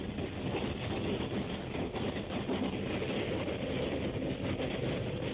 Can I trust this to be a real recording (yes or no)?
yes